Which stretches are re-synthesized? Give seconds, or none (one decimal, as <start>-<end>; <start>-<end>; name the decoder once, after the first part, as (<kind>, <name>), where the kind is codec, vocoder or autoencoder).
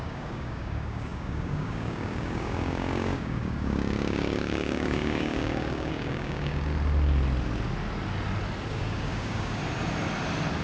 0.0-6.7 (codec, DAC); 8.7-9.6